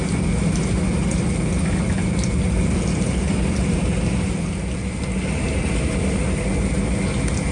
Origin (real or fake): real